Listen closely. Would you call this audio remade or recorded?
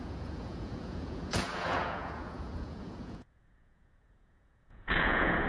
remade